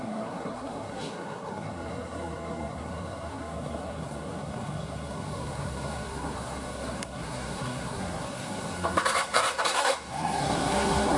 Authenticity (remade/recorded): remade